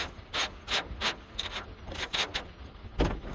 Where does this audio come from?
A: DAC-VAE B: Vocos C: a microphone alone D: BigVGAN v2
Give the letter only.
C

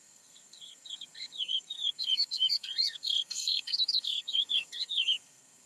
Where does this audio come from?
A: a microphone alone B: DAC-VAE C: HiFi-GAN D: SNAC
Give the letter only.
D